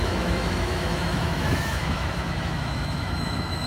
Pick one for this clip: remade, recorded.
remade